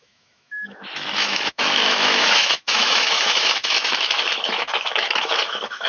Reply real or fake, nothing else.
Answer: fake